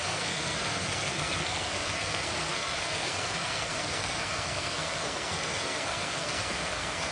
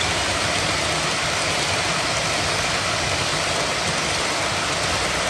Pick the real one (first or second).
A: second